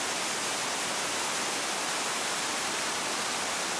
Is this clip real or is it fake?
real